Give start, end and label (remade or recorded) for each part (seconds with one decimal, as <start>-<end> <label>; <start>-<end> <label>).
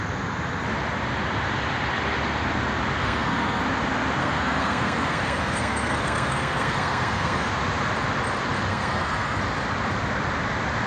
0.0-3.0 recorded; 3.0-3.6 remade; 3.6-4.2 recorded; 4.2-7.5 remade; 7.5-8.7 recorded; 8.7-9.4 remade; 9.4-10.9 recorded